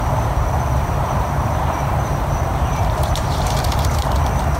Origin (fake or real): fake